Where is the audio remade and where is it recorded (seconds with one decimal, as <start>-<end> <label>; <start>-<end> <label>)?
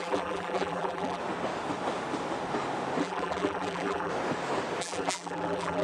0.0-1.2 remade; 1.2-3.0 recorded; 3.0-4.1 remade; 4.1-4.8 recorded; 4.8-5.8 remade